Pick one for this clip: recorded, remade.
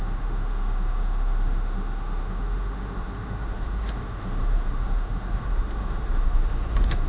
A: remade